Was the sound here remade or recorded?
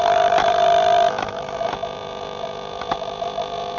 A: remade